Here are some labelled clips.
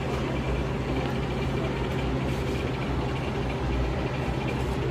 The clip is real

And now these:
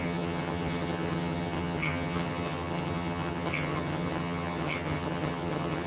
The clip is fake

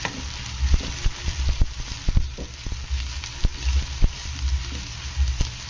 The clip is real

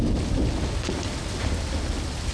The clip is real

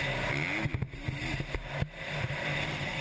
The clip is real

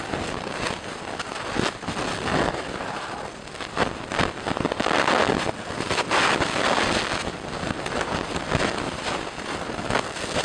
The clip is real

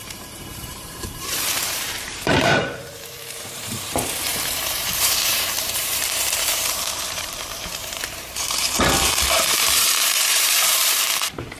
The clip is fake